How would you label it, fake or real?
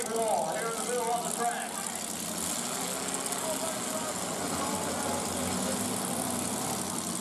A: real